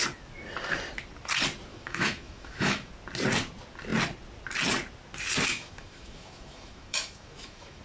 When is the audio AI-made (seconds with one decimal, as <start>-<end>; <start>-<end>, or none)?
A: 1.7-2.9; 5.5-7.8